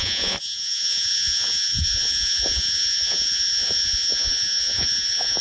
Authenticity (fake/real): fake